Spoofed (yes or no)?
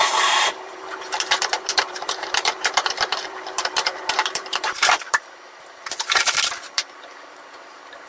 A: yes